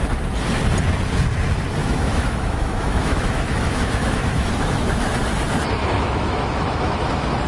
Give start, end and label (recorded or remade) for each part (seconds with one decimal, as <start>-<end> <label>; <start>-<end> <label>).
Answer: 0.0-1.8 recorded; 1.8-5.0 remade; 5.0-5.8 recorded; 5.8-7.1 remade; 7.1-7.5 recorded